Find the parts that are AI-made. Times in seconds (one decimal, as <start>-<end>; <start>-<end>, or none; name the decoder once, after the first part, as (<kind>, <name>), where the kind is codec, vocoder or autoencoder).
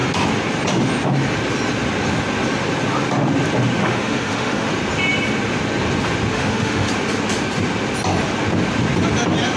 3.8-4.7 (autoencoder, DAC-VAE); 6.3-6.9